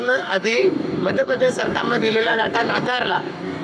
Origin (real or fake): fake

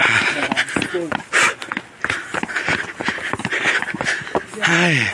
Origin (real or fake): real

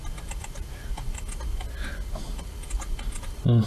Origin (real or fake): real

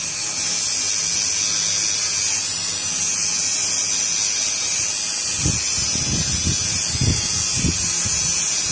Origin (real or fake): real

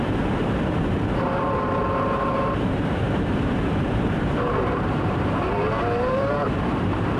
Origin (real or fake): fake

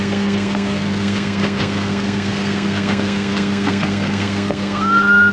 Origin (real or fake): fake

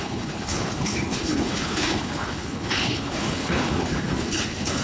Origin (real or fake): fake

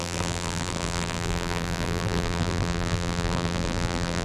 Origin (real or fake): fake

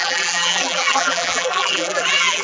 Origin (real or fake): fake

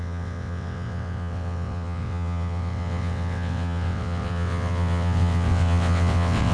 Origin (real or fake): fake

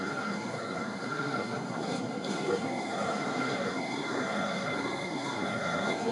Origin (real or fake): fake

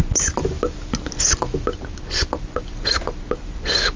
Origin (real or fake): real